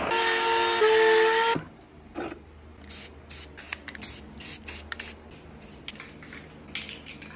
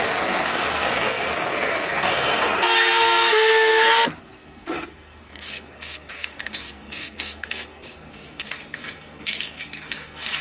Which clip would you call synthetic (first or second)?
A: second